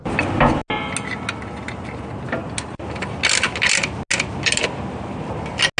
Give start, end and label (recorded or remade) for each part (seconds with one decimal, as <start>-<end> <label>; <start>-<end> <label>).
0.0-5.8 recorded